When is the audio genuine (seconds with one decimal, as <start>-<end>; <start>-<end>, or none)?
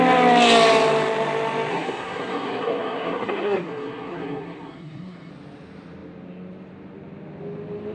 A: 0.0-1.7; 5.3-7.9